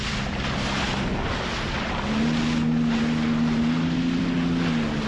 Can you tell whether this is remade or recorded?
recorded